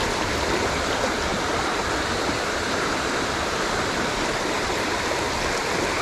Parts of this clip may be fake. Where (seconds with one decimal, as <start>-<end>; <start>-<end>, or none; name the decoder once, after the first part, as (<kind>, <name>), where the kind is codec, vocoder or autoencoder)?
1.3-4.9 (vocoder, BigVGAN v2)